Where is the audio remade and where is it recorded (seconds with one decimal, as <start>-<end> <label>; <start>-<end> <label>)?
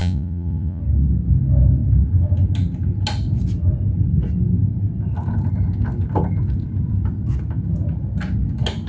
0.0-0.8 remade; 0.8-8.9 recorded